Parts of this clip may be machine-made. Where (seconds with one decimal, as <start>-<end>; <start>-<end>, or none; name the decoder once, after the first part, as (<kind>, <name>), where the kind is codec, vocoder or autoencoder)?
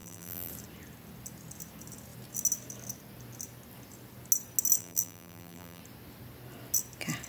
0.0-0.5 (vocoder, BigVGAN v2); 4.8-5.8